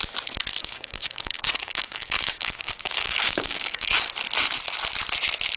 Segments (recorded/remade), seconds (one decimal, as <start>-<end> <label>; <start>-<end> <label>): 0.0-0.6 recorded; 0.6-4.0 remade; 4.0-5.6 recorded